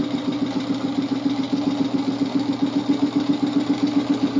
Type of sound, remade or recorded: recorded